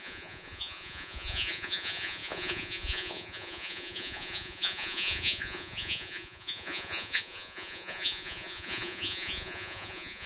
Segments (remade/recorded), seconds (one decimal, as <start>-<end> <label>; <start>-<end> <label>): 0.0-10.3 remade